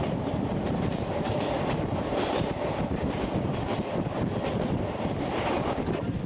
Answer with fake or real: real